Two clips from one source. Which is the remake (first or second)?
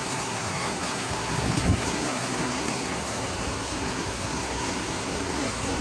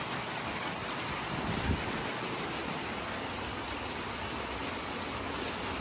first